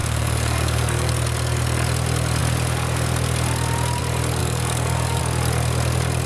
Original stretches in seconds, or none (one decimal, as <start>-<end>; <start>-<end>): 1.1-4.4; 5.2-6.3